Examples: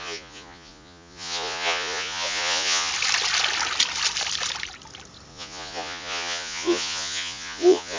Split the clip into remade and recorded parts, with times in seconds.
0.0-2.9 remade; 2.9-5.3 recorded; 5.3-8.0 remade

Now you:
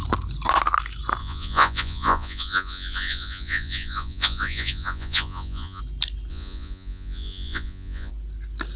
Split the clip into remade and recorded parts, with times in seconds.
0.0-1.2 recorded; 1.2-5.8 remade; 5.8-6.3 recorded; 6.3-8.1 remade; 8.1-8.8 recorded

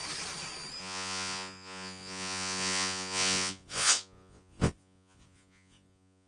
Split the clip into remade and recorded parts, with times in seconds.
0.0-0.8 recorded; 0.8-6.3 remade

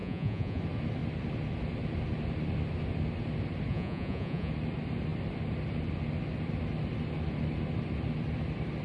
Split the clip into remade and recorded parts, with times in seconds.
0.0-0.6 remade; 0.6-3.7 recorded; 3.7-4.5 remade; 4.5-8.8 recorded

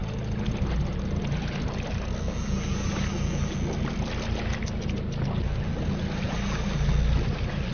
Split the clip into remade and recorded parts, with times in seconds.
0.0-7.7 recorded

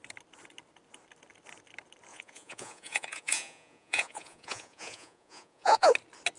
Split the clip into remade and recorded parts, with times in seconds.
0.0-2.1 recorded; 2.1-5.9 remade; 5.9-6.4 recorded

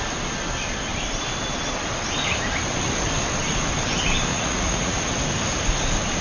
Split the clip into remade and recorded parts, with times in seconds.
0.0-4.3 recorded; 4.3-5.1 remade; 5.1-6.2 recorded